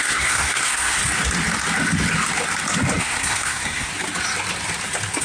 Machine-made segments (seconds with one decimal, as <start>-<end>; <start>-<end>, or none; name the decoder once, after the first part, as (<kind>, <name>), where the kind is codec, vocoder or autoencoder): 0.0-1.0 (codec, SNAC); 3.0-3.9